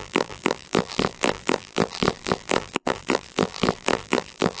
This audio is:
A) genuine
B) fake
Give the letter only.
B